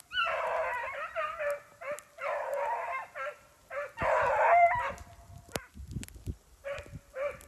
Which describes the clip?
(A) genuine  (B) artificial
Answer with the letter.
A